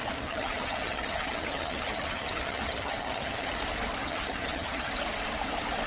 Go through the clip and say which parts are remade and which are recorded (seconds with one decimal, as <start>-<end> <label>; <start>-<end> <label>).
0.0-3.5 remade; 3.5-4.0 recorded; 4.0-4.9 remade; 4.9-5.9 recorded